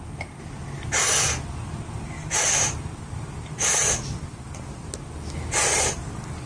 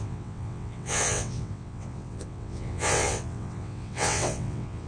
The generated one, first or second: second